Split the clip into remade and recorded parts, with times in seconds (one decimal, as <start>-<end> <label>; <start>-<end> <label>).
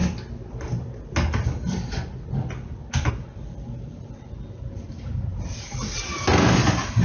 0.0-5.3 recorded; 5.3-6.2 remade; 6.2-7.0 recorded